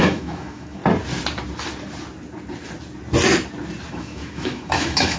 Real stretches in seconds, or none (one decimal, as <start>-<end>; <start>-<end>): 0.8-3.9